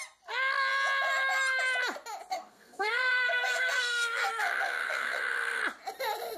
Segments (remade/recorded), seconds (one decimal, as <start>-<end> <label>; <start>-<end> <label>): 0.0-2.3 recorded; 2.3-5.6 remade; 5.6-6.4 recorded